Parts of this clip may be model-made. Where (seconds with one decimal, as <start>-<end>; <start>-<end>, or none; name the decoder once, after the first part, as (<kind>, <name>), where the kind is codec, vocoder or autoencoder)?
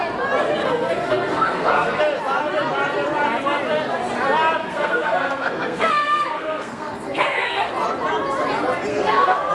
0.6-2.0 (codec, SNAC); 4.6-7.7; 8.9-9.5